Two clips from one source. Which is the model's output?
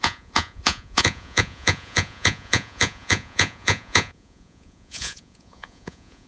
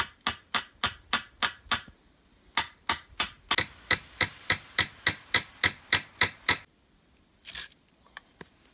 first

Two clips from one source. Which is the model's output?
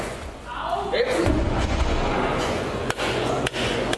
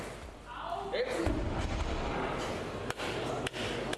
first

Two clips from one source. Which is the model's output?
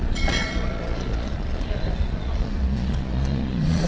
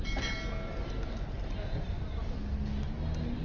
first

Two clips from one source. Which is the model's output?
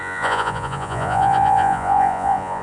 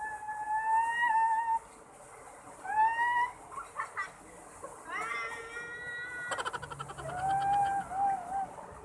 first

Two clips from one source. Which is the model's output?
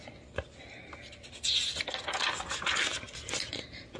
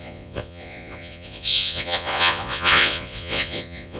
second